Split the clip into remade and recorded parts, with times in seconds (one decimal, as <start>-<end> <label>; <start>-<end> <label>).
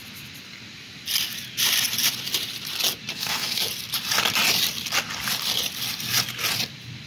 0.0-3.1 recorded; 3.1-3.7 remade; 3.7-7.1 recorded